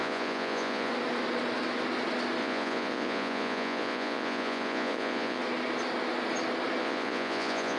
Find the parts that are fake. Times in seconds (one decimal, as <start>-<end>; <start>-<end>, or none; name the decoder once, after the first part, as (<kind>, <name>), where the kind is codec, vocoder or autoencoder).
0.0-0.9 (vocoder, Vocos); 2.4-5.4; 6.8-7.8